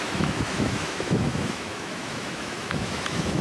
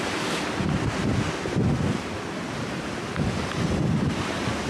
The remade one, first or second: first